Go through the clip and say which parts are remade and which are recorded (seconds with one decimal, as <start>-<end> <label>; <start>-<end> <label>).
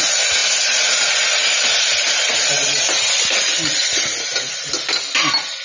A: 0.0-5.6 recorded